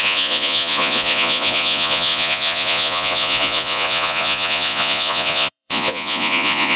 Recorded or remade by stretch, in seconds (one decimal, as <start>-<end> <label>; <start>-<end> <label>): 0.0-6.8 remade